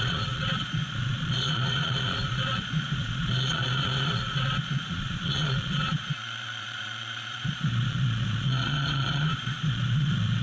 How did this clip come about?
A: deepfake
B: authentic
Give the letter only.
A